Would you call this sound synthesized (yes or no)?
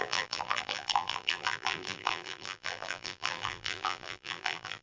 yes